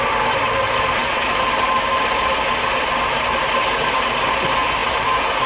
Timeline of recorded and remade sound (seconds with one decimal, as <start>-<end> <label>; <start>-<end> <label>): 0.0-5.5 recorded